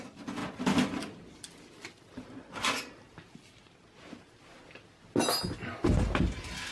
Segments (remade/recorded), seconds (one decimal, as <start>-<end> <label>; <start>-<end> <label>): 0.0-6.7 recorded